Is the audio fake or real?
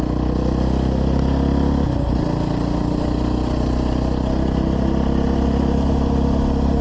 real